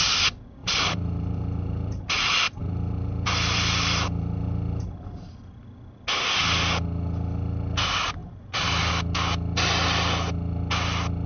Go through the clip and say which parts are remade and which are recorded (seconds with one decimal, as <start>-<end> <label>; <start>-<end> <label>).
0.0-0.6 recorded; 0.6-2.0 remade; 2.0-2.6 recorded; 2.6-4.8 remade; 4.8-8.2 recorded; 8.2-8.9 remade; 8.9-11.3 recorded